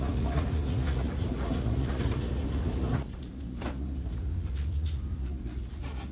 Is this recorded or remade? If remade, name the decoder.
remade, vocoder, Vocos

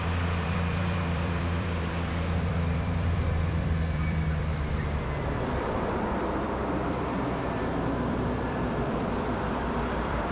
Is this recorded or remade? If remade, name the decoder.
remade, vocoder, BigVGAN v2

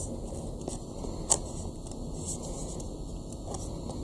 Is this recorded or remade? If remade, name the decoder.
recorded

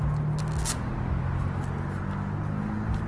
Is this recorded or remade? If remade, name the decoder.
recorded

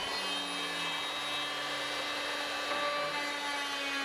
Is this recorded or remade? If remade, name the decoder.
recorded